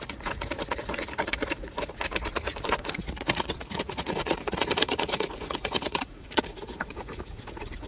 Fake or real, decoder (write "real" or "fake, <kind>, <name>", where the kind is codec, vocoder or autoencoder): fake, vocoder, Vocos